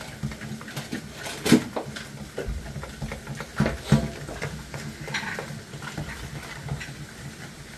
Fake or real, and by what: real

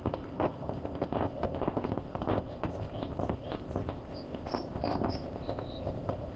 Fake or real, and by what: fake, codec, ZipCodec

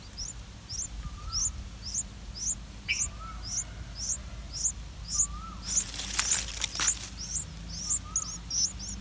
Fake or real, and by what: real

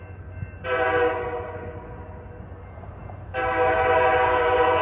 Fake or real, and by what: real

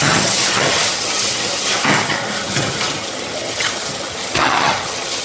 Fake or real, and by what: fake, vocoder, HiFi-GAN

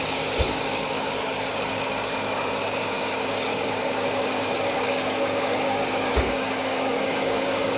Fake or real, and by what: fake, codec, DAC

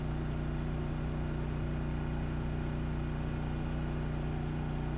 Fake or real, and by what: real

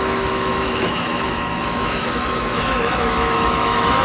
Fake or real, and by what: fake, autoencoder, DAC-VAE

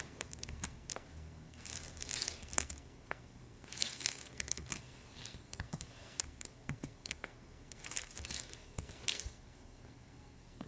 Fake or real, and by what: fake, codec, SNAC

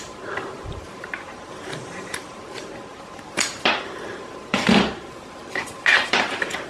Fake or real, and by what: fake, vocoder, BigVGAN v2